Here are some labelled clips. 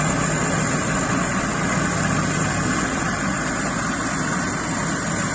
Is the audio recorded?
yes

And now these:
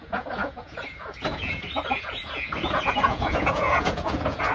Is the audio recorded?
no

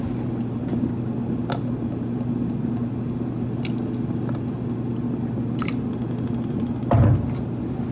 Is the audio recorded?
yes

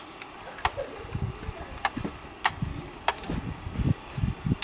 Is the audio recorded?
yes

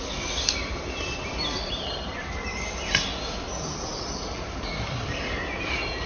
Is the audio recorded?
yes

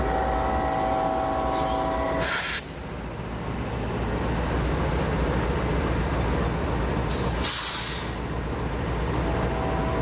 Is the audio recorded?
yes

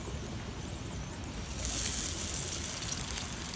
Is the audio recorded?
yes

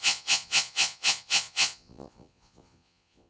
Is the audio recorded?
no